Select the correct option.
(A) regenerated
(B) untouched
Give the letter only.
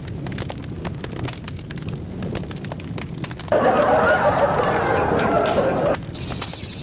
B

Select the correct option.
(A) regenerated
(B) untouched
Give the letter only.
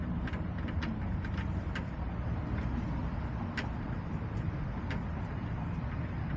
B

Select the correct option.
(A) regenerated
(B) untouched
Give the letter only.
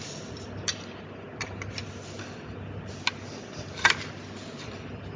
B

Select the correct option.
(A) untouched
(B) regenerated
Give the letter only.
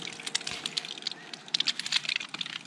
A